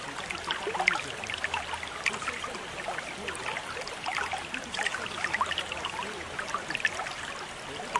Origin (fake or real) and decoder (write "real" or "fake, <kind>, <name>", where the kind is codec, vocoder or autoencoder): real